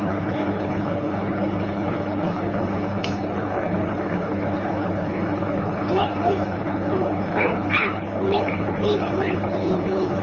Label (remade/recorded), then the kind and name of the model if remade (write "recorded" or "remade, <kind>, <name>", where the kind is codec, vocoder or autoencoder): remade, codec, HILCodec